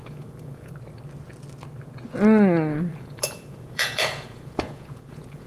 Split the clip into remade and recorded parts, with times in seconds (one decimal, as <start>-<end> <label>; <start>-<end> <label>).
0.0-0.7 remade; 0.7-2.9 recorded; 2.9-5.5 remade